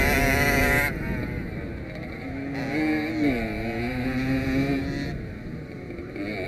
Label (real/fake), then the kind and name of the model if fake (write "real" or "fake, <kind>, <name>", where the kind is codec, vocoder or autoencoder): real